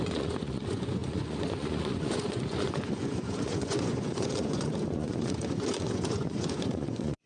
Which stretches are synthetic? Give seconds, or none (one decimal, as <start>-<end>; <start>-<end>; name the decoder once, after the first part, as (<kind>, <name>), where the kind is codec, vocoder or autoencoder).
0.0-7.3 (vocoder, Vocos)